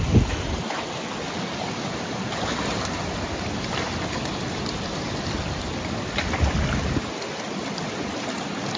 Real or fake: real